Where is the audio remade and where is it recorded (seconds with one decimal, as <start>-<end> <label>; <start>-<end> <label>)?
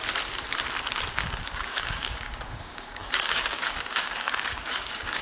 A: 0.0-1.1 recorded; 1.1-5.2 remade